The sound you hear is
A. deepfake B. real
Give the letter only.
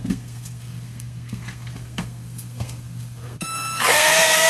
A